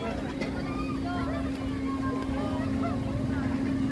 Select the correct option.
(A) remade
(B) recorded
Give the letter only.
B